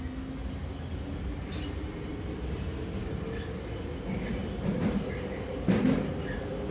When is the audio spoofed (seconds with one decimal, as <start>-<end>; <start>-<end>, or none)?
none